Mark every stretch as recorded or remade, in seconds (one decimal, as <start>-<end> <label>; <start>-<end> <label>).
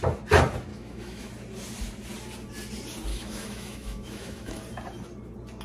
0.0-0.7 recorded; 0.7-1.3 remade; 1.3-3.1 recorded; 3.1-4.6 remade; 4.6-5.6 recorded